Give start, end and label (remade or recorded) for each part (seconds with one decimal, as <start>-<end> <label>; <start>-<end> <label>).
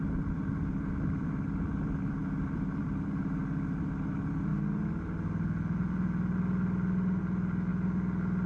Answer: 0.0-4.5 remade; 4.5-7.2 recorded; 7.2-7.7 remade; 7.7-8.5 recorded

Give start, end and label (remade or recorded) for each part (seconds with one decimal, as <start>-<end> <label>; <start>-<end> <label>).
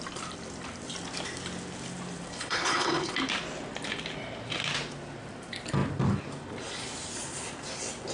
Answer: 0.0-2.3 recorded; 2.3-3.1 remade; 3.1-8.1 recorded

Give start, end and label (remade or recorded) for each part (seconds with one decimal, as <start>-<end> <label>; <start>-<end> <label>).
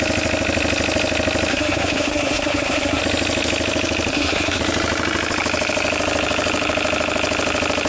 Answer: 0.0-1.5 recorded; 1.5-3.0 remade; 3.0-4.1 recorded; 4.1-4.6 remade; 4.6-7.9 recorded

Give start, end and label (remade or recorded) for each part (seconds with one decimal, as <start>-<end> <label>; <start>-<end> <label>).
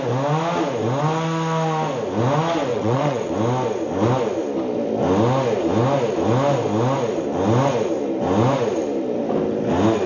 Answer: 0.0-2.7 recorded; 2.7-3.3 remade; 3.3-10.1 recorded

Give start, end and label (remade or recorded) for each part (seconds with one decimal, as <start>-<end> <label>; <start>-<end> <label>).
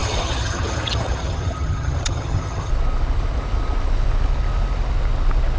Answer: 0.0-2.7 remade; 2.7-5.6 recorded